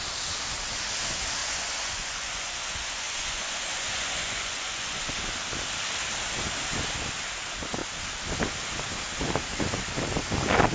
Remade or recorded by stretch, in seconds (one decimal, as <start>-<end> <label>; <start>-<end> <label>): 0.0-1.4 recorded; 1.4-5.0 remade; 5.0-10.7 recorded